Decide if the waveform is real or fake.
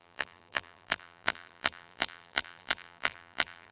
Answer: fake